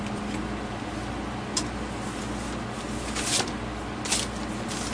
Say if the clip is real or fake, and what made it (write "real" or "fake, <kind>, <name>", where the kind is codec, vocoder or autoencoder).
real